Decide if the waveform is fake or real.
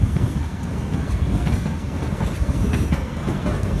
fake